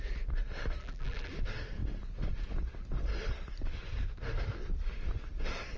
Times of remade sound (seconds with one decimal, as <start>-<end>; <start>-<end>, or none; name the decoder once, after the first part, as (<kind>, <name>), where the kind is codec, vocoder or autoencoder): 0.8-1.3 (vocoder, BigVGAN v2)